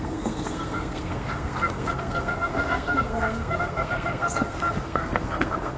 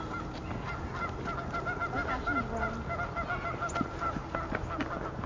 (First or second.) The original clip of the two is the second